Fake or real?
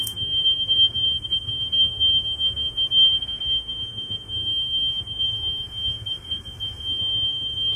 fake